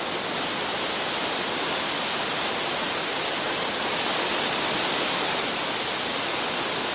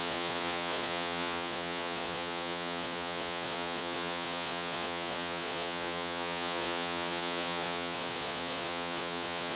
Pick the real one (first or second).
first